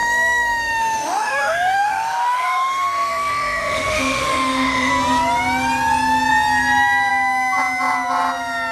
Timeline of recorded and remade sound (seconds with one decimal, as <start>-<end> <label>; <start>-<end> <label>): 0.0-4.9 remade; 4.9-8.7 recorded